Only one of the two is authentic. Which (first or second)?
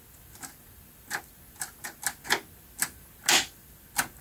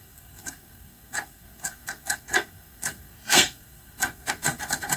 first